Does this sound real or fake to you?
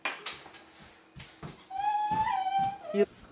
real